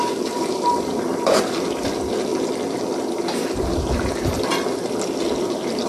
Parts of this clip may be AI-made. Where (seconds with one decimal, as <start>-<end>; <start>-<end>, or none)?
none